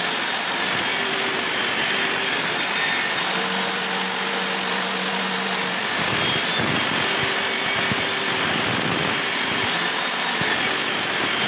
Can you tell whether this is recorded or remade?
recorded